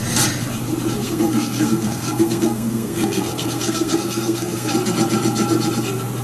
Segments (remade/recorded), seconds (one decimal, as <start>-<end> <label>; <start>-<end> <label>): 0.0-1.0 recorded; 1.0-4.7 remade; 4.7-6.2 recorded